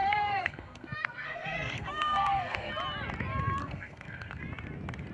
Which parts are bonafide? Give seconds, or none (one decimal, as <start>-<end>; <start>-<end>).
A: 2.7-3.6; 4.4-5.1